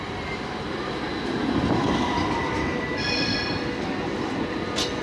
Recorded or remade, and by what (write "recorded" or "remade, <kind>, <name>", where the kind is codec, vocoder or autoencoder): recorded